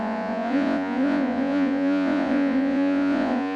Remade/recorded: remade